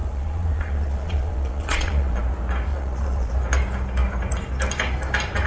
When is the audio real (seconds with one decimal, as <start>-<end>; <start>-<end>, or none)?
2.2-2.7; 3.3-5.5